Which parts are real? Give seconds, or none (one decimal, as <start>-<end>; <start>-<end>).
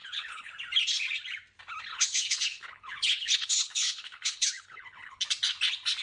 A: 0.5-1.9; 5.2-6.0